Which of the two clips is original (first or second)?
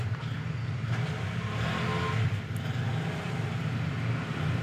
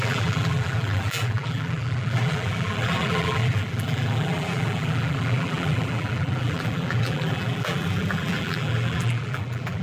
first